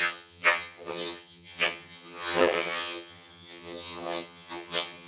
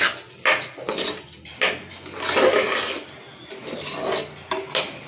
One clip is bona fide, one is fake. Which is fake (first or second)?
first